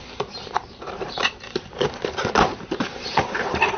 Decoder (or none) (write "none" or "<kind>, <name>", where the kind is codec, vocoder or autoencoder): vocoder, BigVGAN v2